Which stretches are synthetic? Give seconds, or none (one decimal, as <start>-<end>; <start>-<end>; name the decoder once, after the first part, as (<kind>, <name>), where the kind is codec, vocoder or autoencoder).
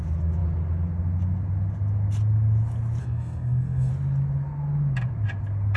3.0-3.9 (codec, SNAC)